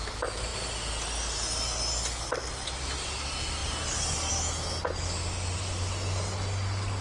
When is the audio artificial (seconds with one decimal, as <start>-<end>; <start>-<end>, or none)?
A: none